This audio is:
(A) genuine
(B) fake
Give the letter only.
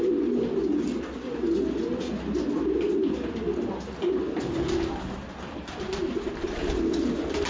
A